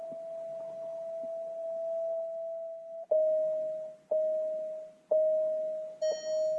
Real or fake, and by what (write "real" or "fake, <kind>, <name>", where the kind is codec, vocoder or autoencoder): real